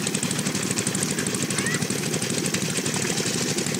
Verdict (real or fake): real